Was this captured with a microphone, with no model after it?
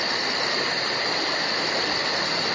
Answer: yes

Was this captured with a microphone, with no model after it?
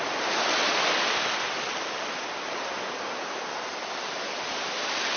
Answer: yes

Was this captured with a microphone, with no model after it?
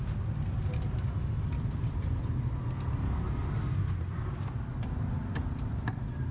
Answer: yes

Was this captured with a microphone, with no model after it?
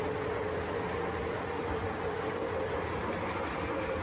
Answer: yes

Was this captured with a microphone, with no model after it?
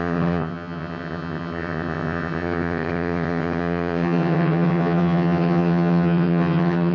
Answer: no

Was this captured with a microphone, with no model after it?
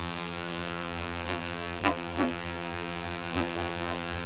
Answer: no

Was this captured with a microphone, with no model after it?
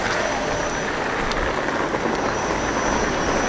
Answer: yes